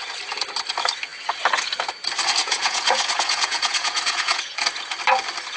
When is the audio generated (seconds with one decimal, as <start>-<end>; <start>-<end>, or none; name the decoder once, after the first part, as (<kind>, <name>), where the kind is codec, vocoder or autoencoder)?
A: 2.4-4.6 (vocoder, Vocos)